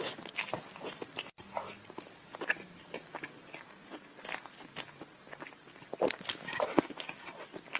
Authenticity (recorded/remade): recorded